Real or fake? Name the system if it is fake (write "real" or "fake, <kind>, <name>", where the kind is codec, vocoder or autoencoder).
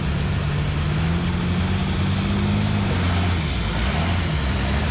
real